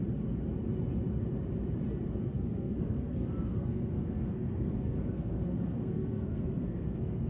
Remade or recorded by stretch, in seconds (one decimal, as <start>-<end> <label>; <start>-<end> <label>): 0.0-2.2 recorded; 2.2-7.3 remade